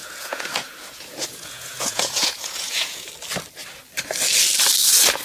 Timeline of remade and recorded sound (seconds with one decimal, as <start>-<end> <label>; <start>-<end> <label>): 0.0-3.1 remade; 3.1-5.2 recorded